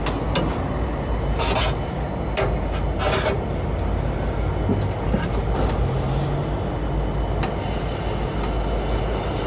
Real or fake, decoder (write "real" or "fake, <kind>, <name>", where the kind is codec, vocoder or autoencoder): real